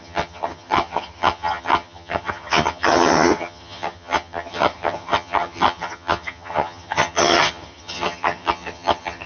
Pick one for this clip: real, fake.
fake